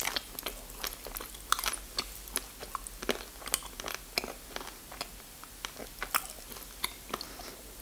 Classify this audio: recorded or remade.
recorded